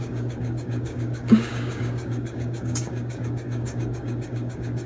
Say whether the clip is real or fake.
fake